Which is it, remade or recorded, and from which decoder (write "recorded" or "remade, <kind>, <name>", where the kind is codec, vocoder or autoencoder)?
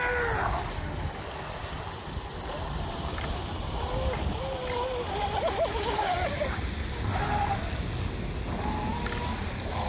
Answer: recorded